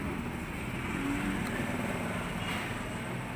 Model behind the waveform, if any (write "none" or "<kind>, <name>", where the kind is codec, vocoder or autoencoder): none